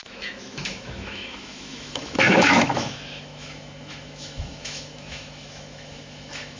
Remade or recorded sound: remade